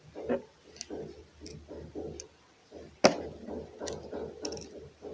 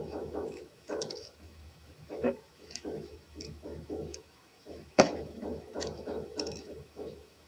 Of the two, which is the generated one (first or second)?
second